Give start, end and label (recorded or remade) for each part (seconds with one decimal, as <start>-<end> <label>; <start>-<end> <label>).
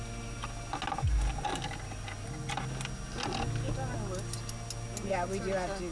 0.0-1.5 recorded; 1.5-2.6 remade; 2.6-5.9 recorded